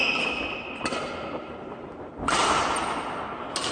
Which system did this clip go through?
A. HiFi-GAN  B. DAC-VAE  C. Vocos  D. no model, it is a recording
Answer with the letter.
D